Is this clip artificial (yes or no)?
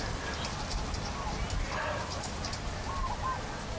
no